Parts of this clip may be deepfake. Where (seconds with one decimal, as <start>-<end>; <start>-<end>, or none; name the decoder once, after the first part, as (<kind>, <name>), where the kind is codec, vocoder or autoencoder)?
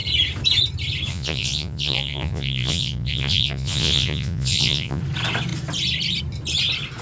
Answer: 1.1-5.0 (vocoder, Vocos)